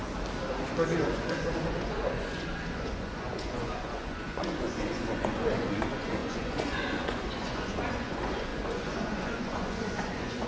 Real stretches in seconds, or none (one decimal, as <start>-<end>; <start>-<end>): 0.0-1.0